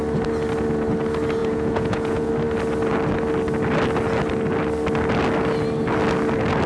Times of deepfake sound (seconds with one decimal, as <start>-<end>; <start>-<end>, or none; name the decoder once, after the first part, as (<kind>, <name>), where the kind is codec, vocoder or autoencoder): 1.4-2.3 (vocoder, Vocos)